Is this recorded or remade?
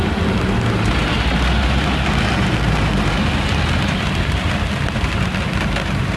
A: recorded